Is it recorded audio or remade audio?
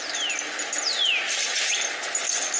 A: recorded